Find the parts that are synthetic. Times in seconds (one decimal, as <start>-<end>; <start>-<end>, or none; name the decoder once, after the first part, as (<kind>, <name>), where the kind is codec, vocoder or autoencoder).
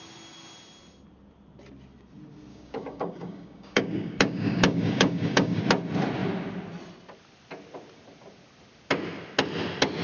2.5-5.6 (codec, DAC)